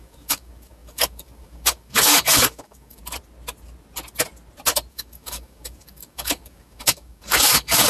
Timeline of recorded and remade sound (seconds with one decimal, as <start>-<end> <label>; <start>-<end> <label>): 0.0-3.0 remade; 3.0-4.9 recorded; 4.9-7.9 remade